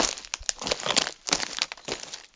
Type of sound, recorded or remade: recorded